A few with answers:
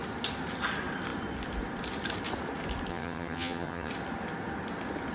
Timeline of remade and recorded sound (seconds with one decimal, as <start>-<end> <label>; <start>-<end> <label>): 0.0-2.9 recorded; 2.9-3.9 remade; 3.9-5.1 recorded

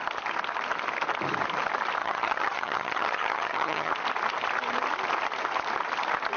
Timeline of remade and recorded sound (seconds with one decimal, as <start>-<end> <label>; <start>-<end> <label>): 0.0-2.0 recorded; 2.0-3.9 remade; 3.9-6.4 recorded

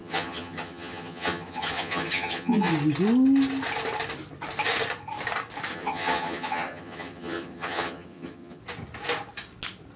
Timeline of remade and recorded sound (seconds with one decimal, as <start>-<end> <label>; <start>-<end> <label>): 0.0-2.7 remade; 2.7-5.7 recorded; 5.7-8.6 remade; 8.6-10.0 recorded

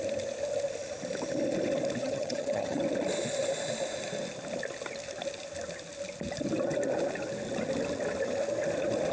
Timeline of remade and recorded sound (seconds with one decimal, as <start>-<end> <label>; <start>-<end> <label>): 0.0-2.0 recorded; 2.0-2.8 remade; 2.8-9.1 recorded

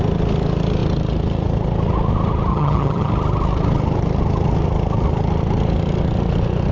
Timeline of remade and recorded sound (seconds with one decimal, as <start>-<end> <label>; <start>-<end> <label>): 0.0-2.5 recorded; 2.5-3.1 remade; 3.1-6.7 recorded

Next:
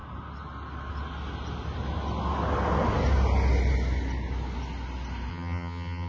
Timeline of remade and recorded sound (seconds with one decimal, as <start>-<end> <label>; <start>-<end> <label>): 0.0-5.3 recorded; 5.3-6.1 remade

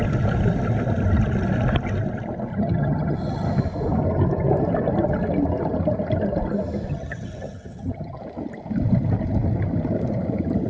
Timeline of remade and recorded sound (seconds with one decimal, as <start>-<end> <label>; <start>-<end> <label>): 0.0-2.5 recorded; 2.5-3.5 remade; 3.5-6.9 recorded; 6.9-8.2 remade; 8.2-10.7 recorded

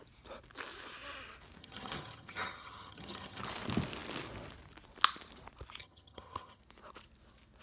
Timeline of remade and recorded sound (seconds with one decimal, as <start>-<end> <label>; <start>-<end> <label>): 0.0-1.6 recorded; 1.6-3.4 remade; 3.4-5.8 recorded; 5.8-6.6 remade; 6.6-7.6 recorded